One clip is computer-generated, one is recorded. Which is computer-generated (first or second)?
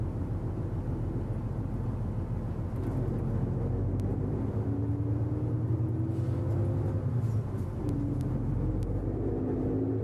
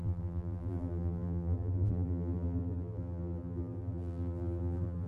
second